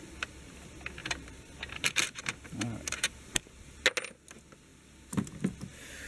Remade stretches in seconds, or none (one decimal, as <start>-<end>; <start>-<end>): 1.0-3.8